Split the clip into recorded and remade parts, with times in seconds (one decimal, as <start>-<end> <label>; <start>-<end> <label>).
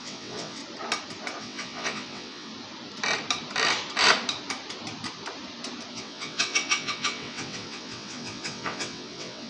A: 0.0-0.6 remade; 0.6-1.4 recorded; 1.4-2.5 remade; 2.5-5.9 recorded; 5.9-9.5 remade